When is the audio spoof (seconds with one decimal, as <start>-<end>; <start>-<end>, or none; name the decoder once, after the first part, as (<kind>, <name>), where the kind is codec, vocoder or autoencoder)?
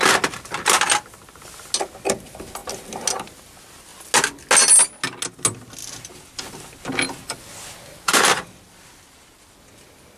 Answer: 5.8-6.8 (vocoder, BigVGAN v2); 8.1-9.3